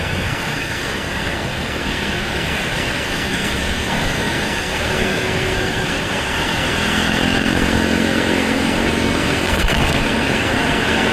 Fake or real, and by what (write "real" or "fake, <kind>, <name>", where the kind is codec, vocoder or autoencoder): fake, codec, SNAC